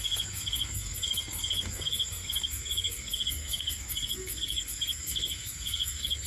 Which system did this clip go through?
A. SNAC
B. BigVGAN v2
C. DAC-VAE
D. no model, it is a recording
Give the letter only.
A